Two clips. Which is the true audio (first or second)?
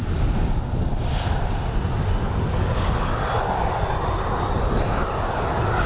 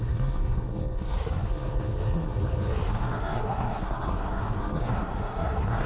first